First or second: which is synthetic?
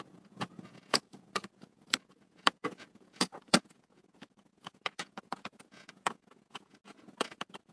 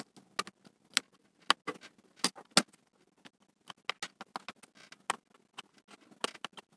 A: first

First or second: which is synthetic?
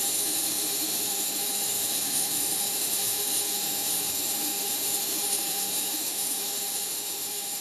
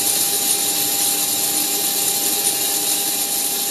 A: first